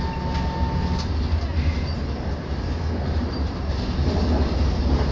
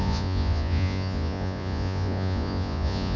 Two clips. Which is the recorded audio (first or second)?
first